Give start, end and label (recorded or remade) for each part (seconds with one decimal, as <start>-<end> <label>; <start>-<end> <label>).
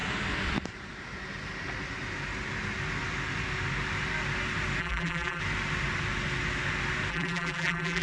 0.0-4.8 recorded; 4.8-5.4 remade; 5.4-7.1 recorded; 7.1-8.0 remade